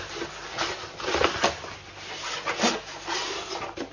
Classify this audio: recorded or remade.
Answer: recorded